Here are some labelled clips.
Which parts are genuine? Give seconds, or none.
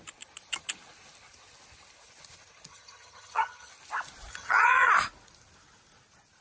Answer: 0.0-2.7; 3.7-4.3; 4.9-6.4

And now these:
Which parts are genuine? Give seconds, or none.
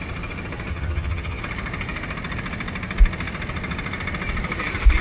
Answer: 0.0-0.7; 1.4-5.0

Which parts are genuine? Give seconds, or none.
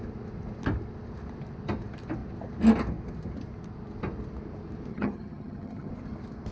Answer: 0.0-4.9; 5.9-6.5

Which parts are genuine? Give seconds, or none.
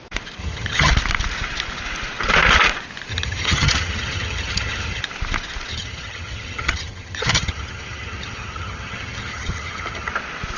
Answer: 0.0-0.4; 0.9-3.1; 5.0-5.7; 10.1-10.6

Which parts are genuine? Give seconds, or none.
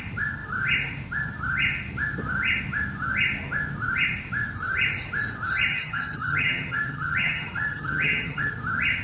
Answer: 0.0-5.7; 8.5-9.0